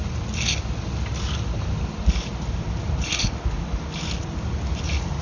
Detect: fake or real real